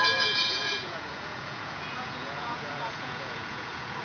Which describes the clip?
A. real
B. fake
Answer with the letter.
B